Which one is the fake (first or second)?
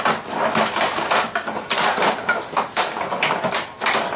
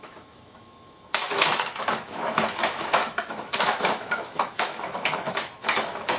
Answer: second